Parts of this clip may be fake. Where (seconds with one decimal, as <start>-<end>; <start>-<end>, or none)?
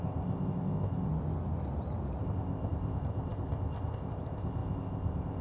0.0-1.1; 2.2-5.4